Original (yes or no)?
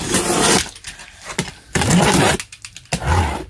yes